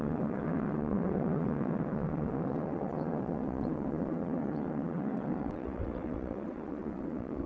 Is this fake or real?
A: fake